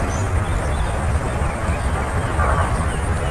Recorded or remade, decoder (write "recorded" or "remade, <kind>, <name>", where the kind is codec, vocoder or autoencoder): recorded